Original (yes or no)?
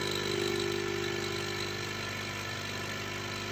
yes